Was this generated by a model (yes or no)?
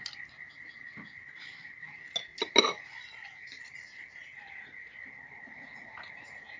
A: no